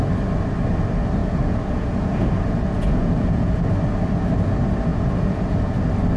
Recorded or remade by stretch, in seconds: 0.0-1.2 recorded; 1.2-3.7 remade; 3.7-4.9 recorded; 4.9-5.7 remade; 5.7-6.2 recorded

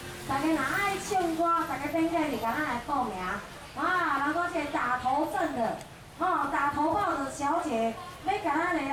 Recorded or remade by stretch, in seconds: 0.0-6.4 recorded; 6.4-7.3 remade; 7.3-8.9 recorded

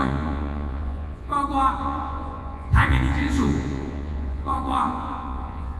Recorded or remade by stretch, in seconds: 0.0-1.3 remade; 1.3-1.8 recorded; 1.8-5.8 remade

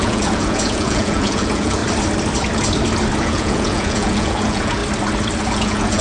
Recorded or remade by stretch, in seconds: 0.0-1.8 remade; 1.8-3.2 recorded; 3.2-4.8 remade; 4.8-5.4 recorded; 5.4-6.0 remade

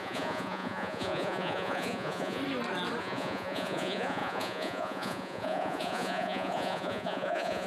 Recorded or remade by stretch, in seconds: 0.0-2.4 remade; 2.4-3.0 recorded; 3.0-7.7 remade